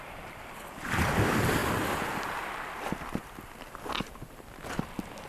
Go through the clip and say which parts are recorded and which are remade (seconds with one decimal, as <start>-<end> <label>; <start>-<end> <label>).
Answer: 0.0-5.3 recorded